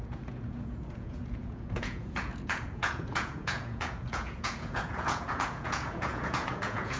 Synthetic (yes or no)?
yes